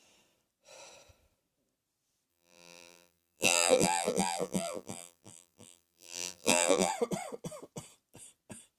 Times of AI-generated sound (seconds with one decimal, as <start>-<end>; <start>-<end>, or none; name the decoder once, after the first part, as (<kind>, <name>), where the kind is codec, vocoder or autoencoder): 2.3-6.9 (vocoder, BigVGAN v2)